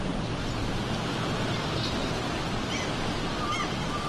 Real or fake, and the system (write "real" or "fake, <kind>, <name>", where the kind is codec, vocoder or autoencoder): real